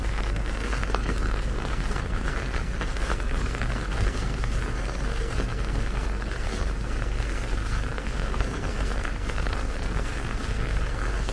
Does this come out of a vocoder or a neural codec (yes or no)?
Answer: yes